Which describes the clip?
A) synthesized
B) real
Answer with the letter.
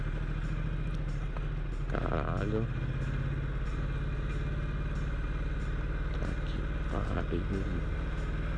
B